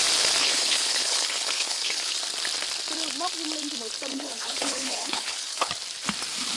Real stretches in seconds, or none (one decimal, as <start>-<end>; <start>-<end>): 0.0-0.4; 2.1-4.1; 5.7-6.6